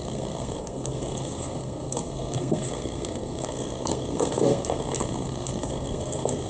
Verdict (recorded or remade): remade